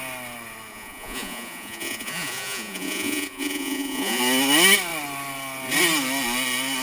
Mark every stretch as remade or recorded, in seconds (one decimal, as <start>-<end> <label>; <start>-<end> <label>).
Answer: 0.0-0.7 recorded; 0.7-4.2 remade; 4.2-6.8 recorded